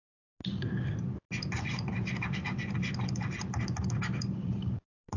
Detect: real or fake real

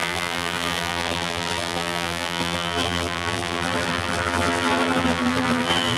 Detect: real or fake fake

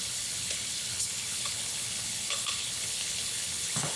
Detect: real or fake fake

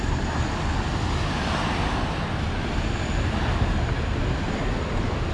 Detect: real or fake real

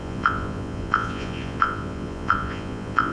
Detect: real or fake fake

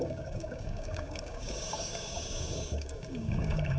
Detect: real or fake fake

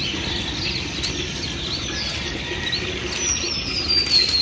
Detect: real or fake real